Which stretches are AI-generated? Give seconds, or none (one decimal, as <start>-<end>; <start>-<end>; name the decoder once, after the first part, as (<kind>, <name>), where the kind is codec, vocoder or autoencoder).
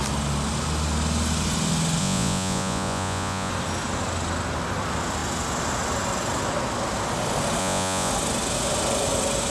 2.0-3.5 (vocoder, Vocos); 7.6-8.1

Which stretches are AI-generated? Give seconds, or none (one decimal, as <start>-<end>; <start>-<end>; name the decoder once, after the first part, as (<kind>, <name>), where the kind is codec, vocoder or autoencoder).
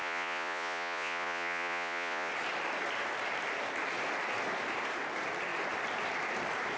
0.0-2.3 (vocoder, Vocos)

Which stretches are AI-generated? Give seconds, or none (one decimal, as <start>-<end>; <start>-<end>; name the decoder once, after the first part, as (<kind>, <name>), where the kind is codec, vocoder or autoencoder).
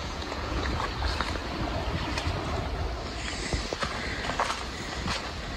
0.0-0.7 (vocoder, Vocos)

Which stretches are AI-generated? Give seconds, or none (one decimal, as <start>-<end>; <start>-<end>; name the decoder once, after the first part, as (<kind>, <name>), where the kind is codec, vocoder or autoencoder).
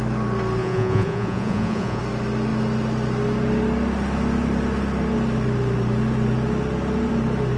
0.6-2.0 (vocoder, Vocos)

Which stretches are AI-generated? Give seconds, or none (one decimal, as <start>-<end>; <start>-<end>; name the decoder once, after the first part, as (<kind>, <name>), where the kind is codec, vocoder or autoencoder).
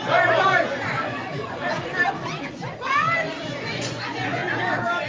0.0-1.9 (vocoder, Vocos); 3.6-4.4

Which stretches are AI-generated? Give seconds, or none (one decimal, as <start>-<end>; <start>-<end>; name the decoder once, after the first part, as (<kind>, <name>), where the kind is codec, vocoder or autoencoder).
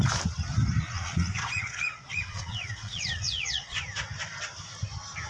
0.8-3.8 (vocoder, Vocos)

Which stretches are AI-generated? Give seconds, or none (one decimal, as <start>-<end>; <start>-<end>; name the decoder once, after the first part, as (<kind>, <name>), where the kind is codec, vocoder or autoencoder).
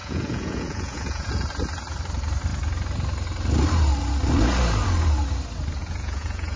0.0-1.3 (vocoder, Vocos); 5.8-6.6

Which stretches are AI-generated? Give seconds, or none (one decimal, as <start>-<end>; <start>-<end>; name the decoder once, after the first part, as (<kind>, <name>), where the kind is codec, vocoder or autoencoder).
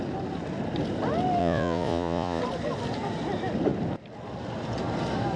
1.4-2.4 (vocoder, Vocos)